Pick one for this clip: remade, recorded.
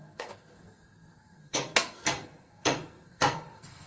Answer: remade